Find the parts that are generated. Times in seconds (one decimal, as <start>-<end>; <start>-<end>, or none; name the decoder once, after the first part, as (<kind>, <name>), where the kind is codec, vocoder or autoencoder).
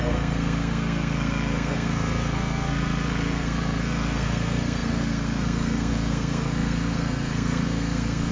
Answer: 0.0-8.3 (codec, SNAC)